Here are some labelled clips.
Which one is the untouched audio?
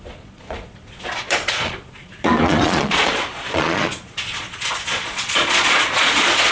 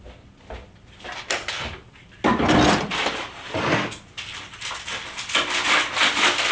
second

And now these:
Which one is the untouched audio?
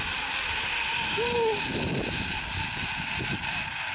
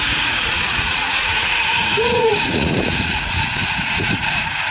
first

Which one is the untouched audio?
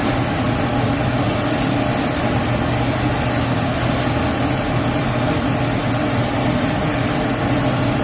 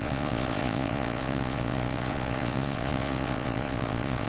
first